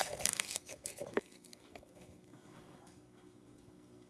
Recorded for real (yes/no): no